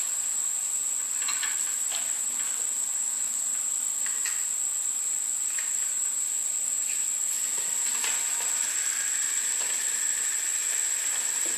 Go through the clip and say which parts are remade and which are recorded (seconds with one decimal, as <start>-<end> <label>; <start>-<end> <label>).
0.0-11.6 recorded